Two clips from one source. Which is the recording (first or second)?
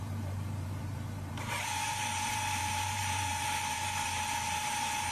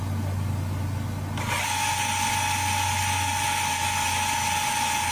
second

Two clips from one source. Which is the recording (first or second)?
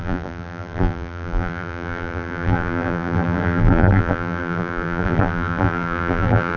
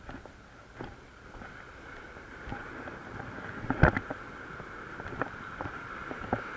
second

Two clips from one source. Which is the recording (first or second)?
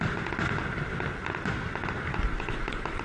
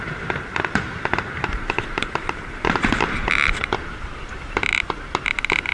first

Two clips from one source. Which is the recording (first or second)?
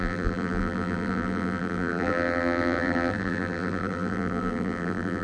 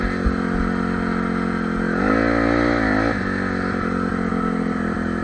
second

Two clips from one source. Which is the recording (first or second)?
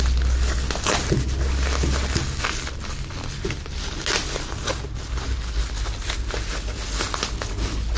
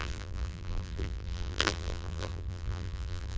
first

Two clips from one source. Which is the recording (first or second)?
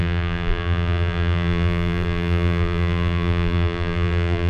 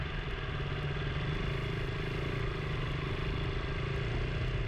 second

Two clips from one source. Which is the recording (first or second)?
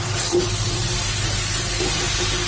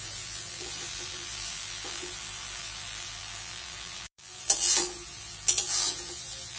first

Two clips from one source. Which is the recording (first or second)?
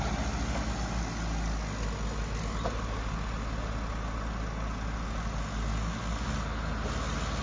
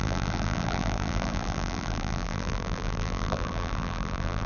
first